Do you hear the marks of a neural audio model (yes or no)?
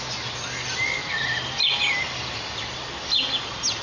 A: no